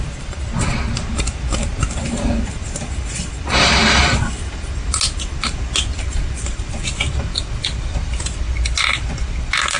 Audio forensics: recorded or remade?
recorded